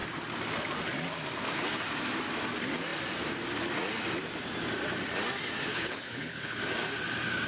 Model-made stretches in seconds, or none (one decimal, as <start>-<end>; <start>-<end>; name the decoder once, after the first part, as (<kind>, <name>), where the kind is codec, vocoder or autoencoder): 5.7-6.6 (codec, HILCodec)